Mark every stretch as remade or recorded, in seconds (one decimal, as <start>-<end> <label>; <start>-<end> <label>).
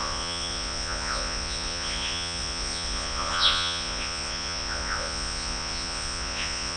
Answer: 0.0-6.8 remade